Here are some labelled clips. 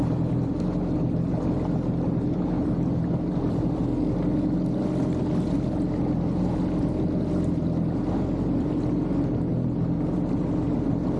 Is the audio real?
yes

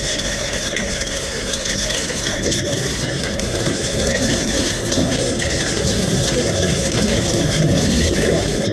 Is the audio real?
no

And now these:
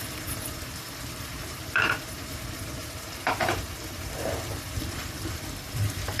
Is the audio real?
no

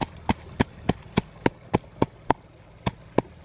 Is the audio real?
yes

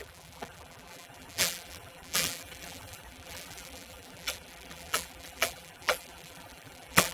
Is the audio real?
no